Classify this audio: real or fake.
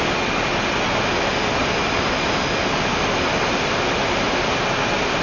real